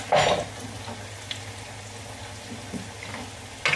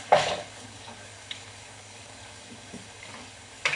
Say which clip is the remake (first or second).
second